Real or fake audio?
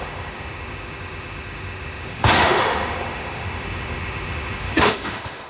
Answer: fake